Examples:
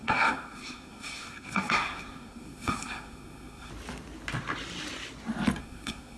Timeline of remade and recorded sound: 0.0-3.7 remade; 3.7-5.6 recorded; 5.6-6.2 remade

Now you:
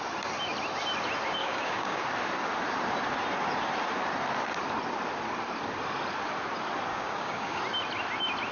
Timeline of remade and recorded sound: 0.0-1.4 recorded; 1.4-2.0 remade; 2.0-6.9 recorded; 6.9-7.6 remade; 7.6-8.5 recorded

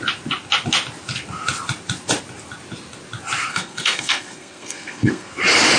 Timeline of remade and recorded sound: 0.0-3.5 recorded; 3.5-5.3 remade; 5.3-5.8 recorded

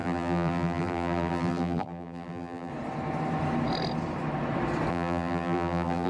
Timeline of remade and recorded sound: 0.0-2.7 remade; 2.7-4.9 recorded; 4.9-6.1 remade

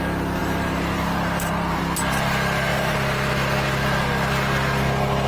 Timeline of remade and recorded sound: 0.0-0.4 recorded; 0.4-1.8 remade; 1.8-2.7 recorded; 2.7-3.3 remade; 3.3-5.3 recorded

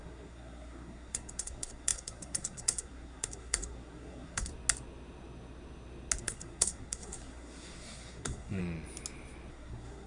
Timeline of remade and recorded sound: 0.0-4.5 remade; 4.5-6.2 recorded; 6.2-8.6 remade; 8.6-9.5 recorded; 9.5-10.1 remade